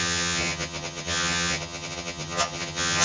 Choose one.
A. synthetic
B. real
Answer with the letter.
A